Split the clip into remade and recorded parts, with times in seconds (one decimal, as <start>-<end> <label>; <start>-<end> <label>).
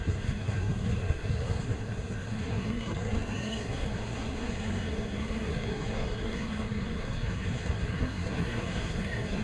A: 0.0-9.4 remade